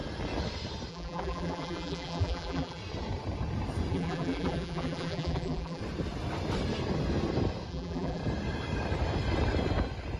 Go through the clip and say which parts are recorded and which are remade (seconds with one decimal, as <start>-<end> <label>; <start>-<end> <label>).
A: 0.0-0.9 recorded; 0.9-2.8 remade; 2.8-3.9 recorded; 3.9-5.8 remade; 5.8-7.7 recorded; 7.7-8.2 remade; 8.2-10.2 recorded